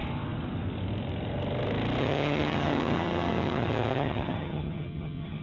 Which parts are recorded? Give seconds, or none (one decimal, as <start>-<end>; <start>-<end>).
0.0-2.0